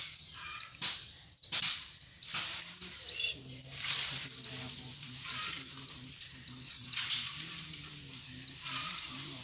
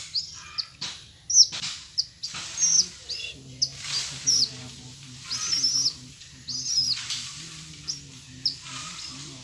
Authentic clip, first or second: second